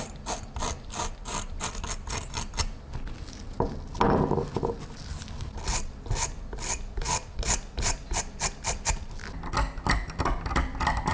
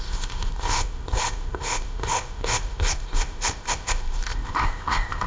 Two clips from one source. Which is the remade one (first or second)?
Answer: second